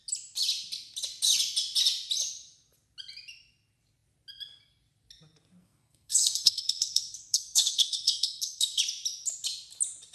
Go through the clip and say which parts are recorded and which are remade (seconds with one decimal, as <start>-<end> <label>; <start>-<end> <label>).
0.0-5.6 recorded; 5.6-8.8 remade; 8.8-10.1 recorded